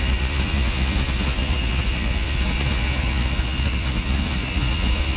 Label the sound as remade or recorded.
remade